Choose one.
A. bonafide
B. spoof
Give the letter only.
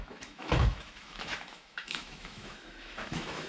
B